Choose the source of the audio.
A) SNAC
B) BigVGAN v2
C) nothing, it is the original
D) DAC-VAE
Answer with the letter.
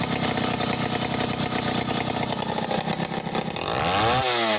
C